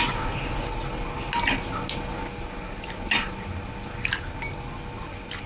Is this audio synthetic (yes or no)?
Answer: no